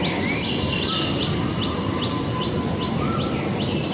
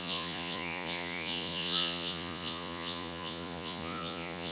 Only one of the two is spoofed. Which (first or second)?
second